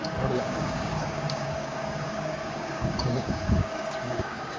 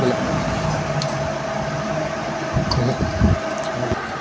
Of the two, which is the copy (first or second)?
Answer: first